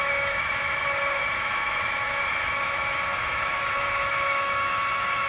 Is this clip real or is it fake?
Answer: fake